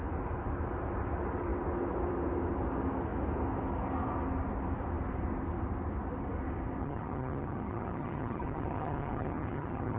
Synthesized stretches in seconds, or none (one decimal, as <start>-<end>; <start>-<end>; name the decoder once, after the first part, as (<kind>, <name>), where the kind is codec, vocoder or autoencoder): 6.8-10.0 (vocoder, HiFi-GAN)